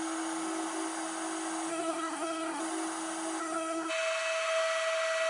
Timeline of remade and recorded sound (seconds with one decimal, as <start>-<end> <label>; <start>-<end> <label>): 0.0-1.7 recorded; 1.7-2.6 remade; 2.6-3.4 recorded; 3.4-3.9 remade; 3.9-5.3 recorded